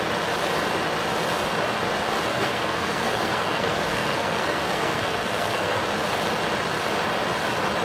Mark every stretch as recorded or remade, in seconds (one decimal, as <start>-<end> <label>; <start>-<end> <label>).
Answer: 0.0-2.3 recorded; 2.3-5.8 remade; 5.8-7.8 recorded

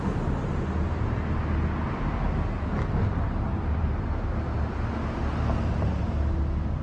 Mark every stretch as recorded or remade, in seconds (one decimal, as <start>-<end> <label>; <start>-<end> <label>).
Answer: 0.0-6.8 recorded

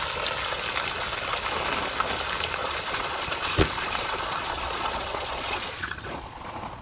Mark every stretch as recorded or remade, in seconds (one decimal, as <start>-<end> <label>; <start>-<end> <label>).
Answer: 0.0-2.6 recorded; 2.6-6.8 remade

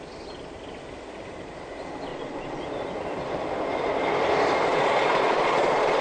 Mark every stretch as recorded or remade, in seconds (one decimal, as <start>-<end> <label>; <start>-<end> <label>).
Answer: 0.0-2.1 recorded; 2.1-2.6 remade; 2.6-4.7 recorded; 4.7-6.0 remade

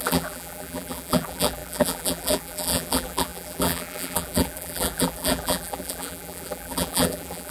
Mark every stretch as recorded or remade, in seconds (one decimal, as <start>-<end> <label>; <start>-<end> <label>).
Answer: 0.0-7.5 remade

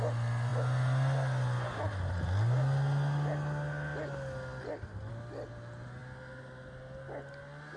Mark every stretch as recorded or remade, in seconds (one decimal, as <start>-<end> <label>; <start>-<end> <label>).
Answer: 0.0-7.8 recorded

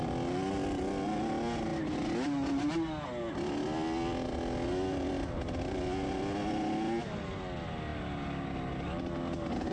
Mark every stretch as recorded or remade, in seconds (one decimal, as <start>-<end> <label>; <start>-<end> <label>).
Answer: 0.0-9.7 recorded

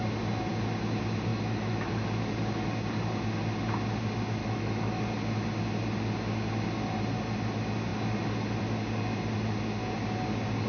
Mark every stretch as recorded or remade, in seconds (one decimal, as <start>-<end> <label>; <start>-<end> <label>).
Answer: 0.0-1.3 recorded; 1.3-1.9 remade; 1.9-4.4 recorded; 4.4-5.0 remade; 5.0-10.7 recorded